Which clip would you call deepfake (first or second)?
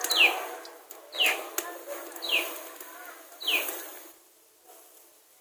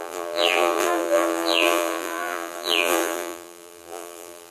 second